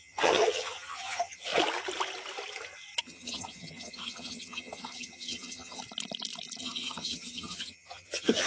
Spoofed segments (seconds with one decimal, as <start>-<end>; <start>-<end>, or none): 0.0-1.5; 3.0-5.8; 6.6-8.5